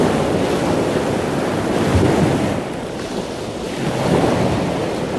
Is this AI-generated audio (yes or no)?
no